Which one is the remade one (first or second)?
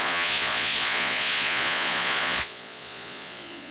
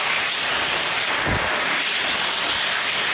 first